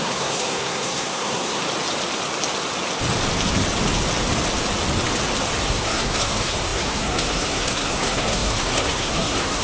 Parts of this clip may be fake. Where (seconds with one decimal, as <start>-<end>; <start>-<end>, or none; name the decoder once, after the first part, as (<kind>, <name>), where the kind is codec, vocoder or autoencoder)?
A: 0.0-1.6 (codec, SNAC); 5.7-9.6